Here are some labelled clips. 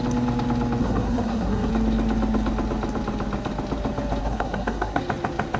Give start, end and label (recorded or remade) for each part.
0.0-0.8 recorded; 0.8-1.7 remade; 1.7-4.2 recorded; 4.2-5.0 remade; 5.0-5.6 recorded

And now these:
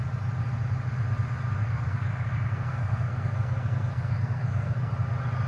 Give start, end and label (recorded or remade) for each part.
0.0-1.6 recorded; 1.6-4.9 remade; 4.9-5.5 recorded